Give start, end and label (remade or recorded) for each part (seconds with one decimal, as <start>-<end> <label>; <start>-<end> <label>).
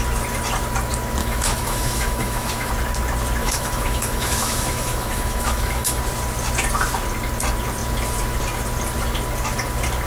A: 0.0-1.2 recorded; 1.2-2.7 remade; 2.7-3.4 recorded; 3.4-6.0 remade; 6.0-10.1 recorded